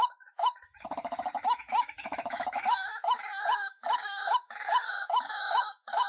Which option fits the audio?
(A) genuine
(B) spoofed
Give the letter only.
B